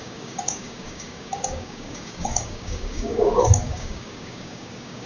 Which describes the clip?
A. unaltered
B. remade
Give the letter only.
B